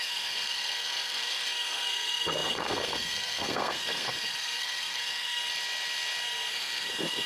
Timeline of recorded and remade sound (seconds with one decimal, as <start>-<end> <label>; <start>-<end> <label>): 0.0-5.4 remade; 5.4-6.5 recorded; 6.5-7.3 remade